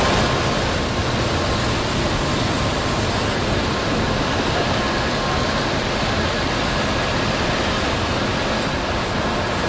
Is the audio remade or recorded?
recorded